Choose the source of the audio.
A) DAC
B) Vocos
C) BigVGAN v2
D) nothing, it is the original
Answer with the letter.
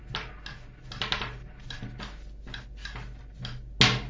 D